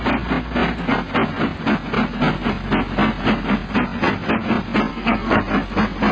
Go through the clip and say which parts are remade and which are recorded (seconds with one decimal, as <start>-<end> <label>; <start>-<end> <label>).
0.0-4.9 recorded; 4.9-5.4 remade; 5.4-6.1 recorded